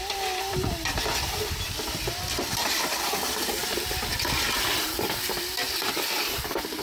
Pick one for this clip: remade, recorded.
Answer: remade